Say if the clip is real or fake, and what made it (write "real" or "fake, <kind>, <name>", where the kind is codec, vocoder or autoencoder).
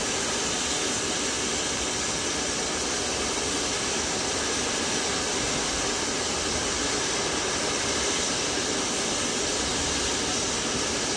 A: real